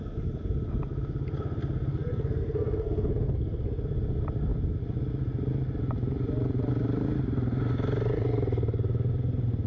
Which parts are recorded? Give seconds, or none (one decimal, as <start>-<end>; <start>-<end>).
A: 0.0-1.9; 3.8-9.7